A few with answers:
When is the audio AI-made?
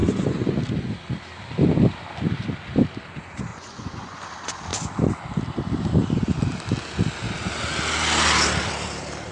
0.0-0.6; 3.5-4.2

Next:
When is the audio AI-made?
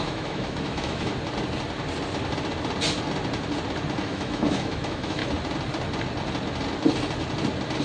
0.0-1.1; 4.0-5.2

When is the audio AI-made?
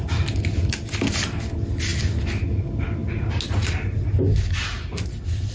none